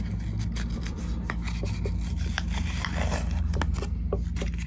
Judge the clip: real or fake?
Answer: real